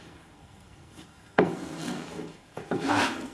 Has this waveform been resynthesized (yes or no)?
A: yes